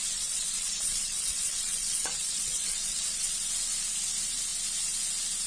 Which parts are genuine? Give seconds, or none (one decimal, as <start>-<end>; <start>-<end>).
3.3-5.5